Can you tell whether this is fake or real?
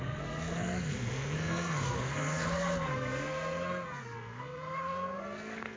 fake